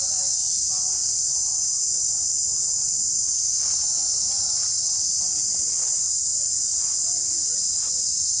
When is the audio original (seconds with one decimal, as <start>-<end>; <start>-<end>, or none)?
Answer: 0.0-8.4